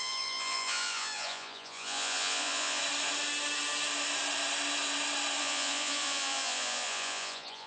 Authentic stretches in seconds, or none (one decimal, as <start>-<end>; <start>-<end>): 2.8-5.4